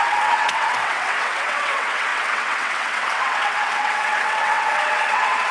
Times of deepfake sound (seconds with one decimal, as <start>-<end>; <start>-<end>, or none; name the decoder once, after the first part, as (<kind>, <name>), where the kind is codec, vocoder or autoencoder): 0.0-5.5 (vocoder, WaveNeXt)